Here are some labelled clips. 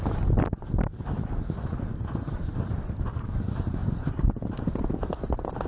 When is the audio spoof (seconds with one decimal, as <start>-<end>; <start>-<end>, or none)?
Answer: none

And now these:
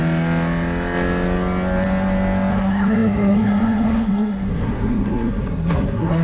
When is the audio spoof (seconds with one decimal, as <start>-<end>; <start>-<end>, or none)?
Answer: 2.5-6.2

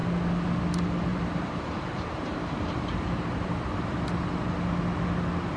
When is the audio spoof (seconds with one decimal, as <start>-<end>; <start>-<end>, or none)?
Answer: 1.1-3.9

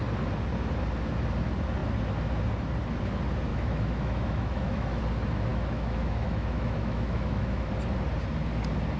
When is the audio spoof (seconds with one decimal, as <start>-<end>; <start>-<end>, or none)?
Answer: 3.5-5.0; 5.5-7.7

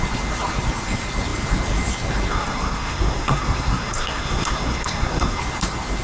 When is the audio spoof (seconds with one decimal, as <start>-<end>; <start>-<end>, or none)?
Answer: 2.3-5.4

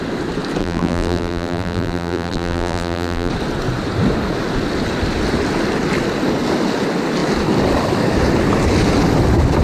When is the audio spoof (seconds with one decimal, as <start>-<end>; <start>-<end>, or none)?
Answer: 0.6-3.3